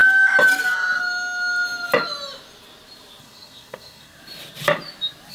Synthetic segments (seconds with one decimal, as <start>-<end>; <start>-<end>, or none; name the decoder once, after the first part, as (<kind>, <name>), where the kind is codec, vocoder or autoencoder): 3.2-4.2 (codec, SNAC)